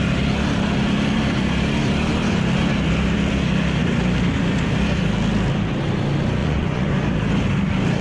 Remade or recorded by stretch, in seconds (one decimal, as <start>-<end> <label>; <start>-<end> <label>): 0.0-6.4 recorded; 6.4-7.0 remade; 7.0-8.0 recorded